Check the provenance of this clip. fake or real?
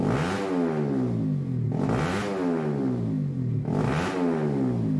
real